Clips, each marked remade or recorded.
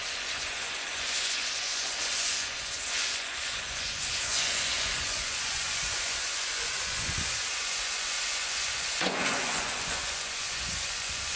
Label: remade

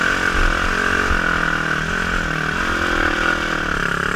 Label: recorded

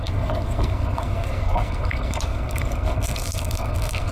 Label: remade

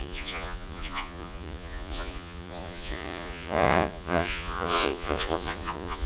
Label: remade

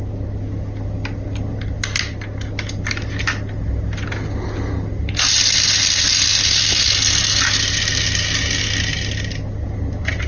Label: recorded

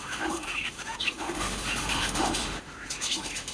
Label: remade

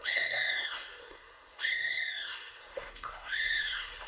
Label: remade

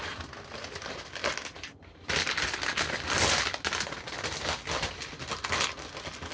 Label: recorded